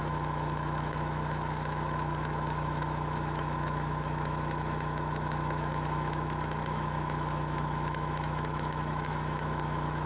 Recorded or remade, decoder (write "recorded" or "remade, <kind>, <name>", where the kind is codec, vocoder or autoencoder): remade, autoencoder, DAC-VAE